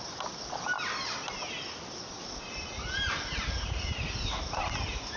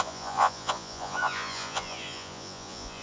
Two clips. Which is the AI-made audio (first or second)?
second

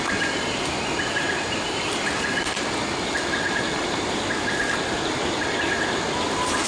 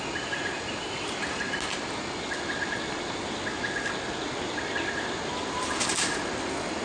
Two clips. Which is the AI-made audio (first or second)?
first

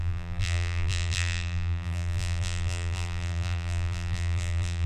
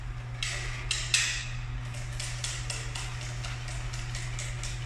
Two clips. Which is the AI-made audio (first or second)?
first